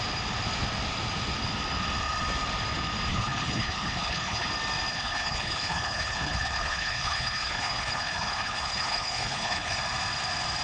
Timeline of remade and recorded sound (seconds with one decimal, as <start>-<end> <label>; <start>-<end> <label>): 0.0-3.1 recorded; 3.1-4.5 remade; 4.5-4.9 recorded; 4.9-9.8 remade; 9.8-10.6 recorded